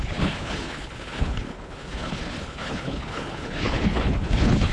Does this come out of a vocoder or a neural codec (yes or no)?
yes